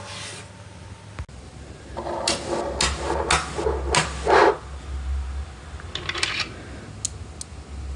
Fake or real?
real